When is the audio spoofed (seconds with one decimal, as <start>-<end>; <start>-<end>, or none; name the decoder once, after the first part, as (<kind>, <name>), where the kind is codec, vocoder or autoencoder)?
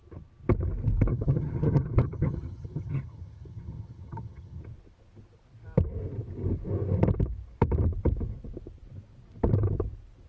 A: 1.1-4.6 (vocoder, HiFi-GAN)